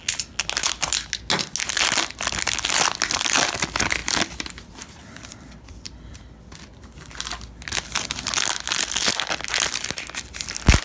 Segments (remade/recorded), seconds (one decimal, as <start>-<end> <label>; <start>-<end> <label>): 0.0-4.0 recorded; 4.0-6.4 remade; 6.4-10.8 recorded